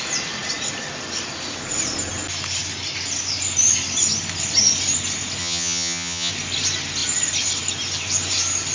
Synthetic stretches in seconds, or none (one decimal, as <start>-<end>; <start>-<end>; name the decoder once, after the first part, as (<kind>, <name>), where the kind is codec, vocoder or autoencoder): 5.4-6.3 (vocoder, HiFi-GAN)